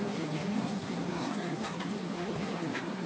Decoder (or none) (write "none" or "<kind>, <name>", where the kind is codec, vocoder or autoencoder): codec, SNAC